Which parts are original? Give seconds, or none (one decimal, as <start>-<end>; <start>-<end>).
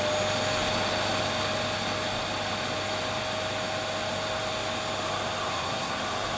0.0-5.5; 6.0-6.4